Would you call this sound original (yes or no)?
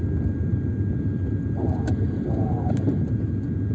yes